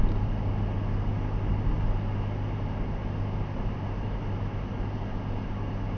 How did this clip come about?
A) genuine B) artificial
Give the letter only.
A